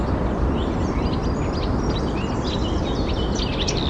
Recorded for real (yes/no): yes